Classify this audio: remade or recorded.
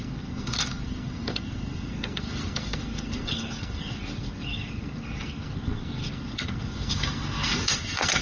remade